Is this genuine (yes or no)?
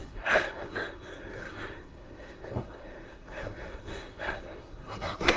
no